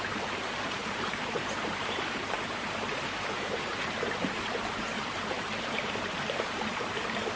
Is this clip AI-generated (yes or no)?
yes